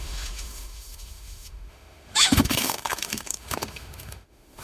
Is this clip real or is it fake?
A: fake